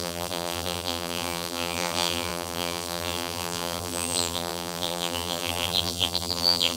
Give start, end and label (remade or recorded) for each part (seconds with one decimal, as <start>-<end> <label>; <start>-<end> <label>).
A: 0.0-6.8 remade